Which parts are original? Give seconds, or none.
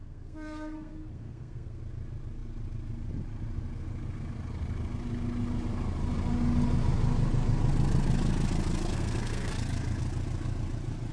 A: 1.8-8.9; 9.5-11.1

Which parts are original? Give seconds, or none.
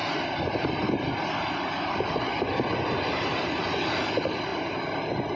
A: 0.0-5.4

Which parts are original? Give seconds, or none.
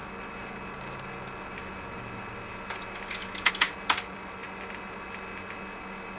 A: 0.0-6.2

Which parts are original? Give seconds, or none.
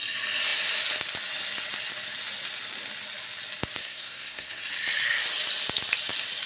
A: 0.0-3.8; 4.6-6.5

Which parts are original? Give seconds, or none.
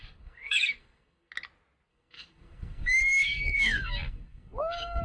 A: 1.3-1.9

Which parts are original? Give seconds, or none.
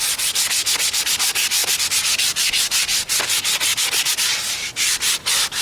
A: 0.0-5.6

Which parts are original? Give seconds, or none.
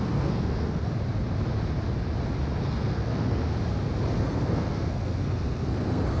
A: 0.9-2.6; 3.4-4.2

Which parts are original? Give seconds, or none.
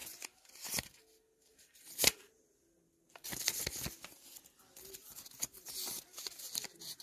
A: 0.0-7.0